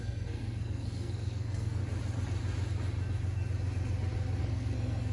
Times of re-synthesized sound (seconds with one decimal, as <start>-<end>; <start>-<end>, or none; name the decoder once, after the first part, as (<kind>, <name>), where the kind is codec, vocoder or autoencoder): 0.0-1.8 (codec, SNAC); 4.4-5.1